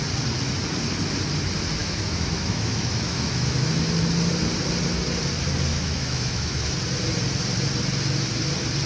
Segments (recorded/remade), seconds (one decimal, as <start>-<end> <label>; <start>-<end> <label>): 0.0-1.8 recorded; 1.8-3.7 remade; 3.7-5.7 recorded; 5.7-6.7 remade; 6.7-8.9 recorded

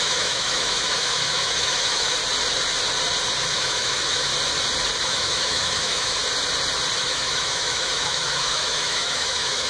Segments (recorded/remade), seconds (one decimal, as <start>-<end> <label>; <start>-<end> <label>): 0.0-2.2 remade; 2.2-3.5 recorded; 3.5-4.3 remade; 4.3-5.0 recorded; 5.0-6.2 remade; 6.2-7.0 recorded; 7.0-9.7 remade

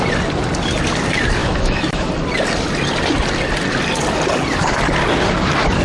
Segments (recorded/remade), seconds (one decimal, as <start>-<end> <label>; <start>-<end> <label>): 0.0-1.4 recorded; 1.4-2.1 remade; 2.1-5.8 recorded

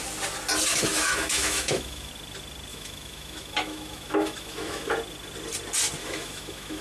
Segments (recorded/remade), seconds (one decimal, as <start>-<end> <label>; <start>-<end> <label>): 0.0-0.7 recorded; 0.7-2.1 remade; 2.1-2.7 recorded; 2.7-4.9 remade; 4.9-6.0 recorded; 6.0-6.8 remade

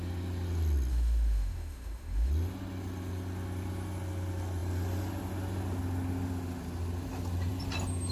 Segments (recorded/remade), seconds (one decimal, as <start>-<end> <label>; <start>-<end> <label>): 0.0-0.9 recorded; 0.9-2.3 remade; 2.3-8.1 recorded